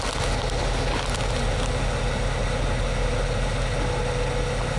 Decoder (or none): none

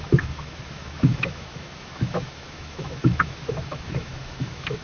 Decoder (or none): autoencoder, DAC-VAE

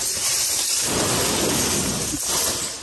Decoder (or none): none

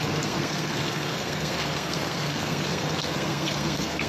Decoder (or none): codec, SNAC